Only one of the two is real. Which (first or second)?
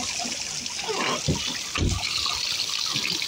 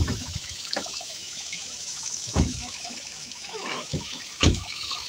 first